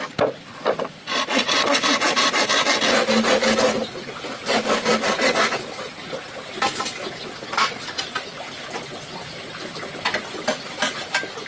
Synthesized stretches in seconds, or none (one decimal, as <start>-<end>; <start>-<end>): none